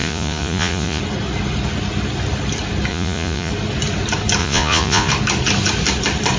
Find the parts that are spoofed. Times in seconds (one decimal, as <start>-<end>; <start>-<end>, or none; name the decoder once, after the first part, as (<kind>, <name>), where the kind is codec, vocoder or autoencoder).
0.0-1.0 (vocoder, Vocos); 2.9-3.5; 4.4-5.1